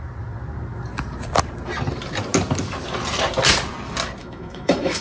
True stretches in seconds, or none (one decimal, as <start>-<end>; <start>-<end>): 0.0-4.2